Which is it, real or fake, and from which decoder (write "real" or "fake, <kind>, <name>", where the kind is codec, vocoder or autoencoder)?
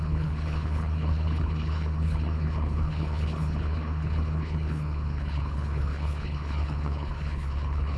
fake, codec, HILCodec